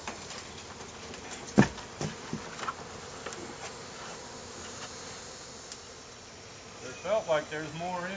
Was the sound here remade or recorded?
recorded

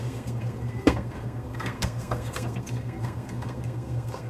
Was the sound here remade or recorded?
remade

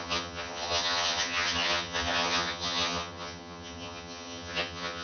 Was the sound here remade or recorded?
remade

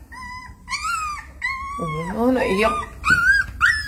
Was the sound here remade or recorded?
recorded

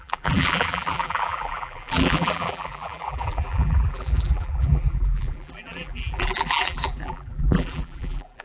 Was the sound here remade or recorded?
remade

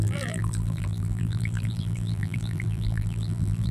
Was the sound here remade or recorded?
remade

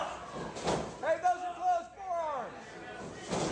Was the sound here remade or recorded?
recorded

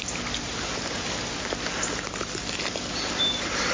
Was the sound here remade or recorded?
recorded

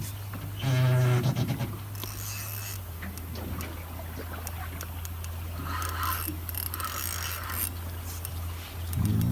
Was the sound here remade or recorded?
recorded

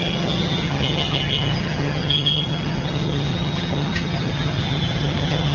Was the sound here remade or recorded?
remade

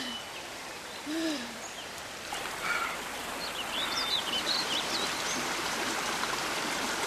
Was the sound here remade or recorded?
remade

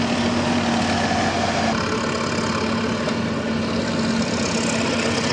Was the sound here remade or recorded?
recorded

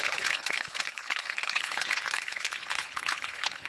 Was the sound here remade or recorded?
remade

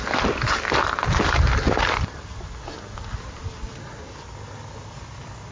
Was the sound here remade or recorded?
recorded